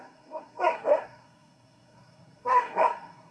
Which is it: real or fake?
fake